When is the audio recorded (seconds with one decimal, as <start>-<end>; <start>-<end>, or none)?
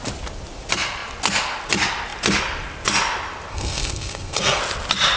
0.0-3.5; 4.6-5.2